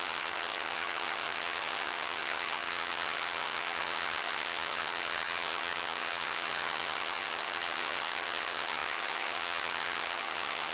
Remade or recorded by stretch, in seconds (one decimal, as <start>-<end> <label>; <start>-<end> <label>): 0.0-10.7 remade